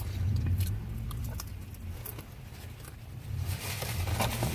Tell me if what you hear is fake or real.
real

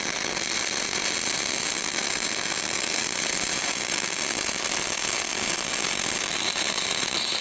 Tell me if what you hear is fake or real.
real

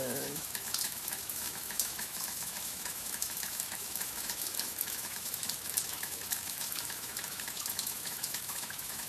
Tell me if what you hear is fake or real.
fake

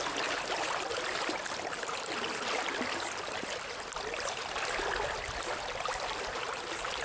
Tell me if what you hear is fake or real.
real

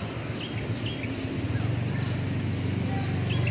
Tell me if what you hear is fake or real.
real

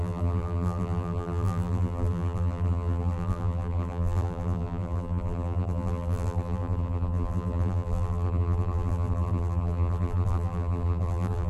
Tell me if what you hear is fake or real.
fake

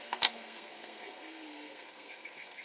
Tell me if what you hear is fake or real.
fake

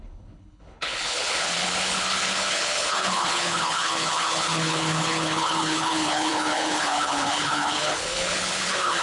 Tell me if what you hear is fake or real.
fake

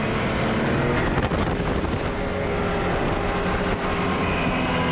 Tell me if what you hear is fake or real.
real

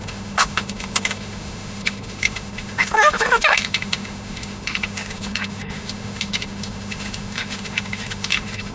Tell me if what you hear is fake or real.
fake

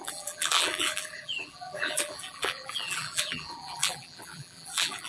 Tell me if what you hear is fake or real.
fake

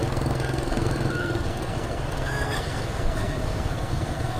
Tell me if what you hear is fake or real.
fake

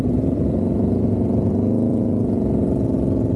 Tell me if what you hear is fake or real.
fake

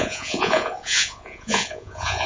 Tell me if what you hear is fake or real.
fake